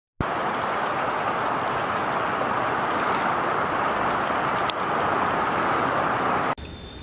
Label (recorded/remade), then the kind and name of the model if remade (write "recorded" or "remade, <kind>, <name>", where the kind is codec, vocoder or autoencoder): recorded